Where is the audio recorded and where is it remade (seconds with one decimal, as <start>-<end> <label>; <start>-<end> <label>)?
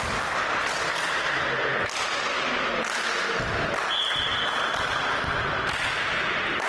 0.0-6.7 recorded